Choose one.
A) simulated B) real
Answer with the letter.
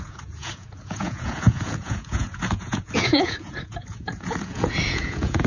A